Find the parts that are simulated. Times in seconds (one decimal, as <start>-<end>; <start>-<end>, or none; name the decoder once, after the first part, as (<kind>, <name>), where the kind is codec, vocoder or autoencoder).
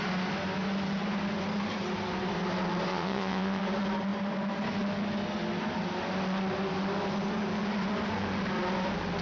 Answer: 2.9-3.6 (vocoder, WaveNeXt)